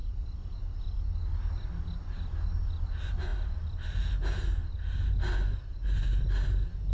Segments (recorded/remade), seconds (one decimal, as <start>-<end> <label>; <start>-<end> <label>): 0.0-6.9 recorded